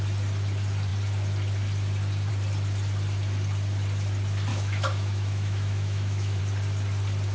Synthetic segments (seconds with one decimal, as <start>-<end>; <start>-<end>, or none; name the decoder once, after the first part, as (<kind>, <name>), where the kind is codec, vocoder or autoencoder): 4.5-6.4 (autoencoder, DAC-VAE)